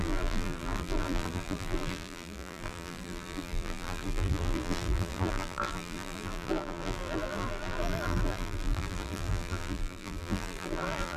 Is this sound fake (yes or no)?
yes